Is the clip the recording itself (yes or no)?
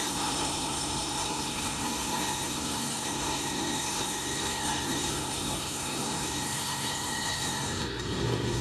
no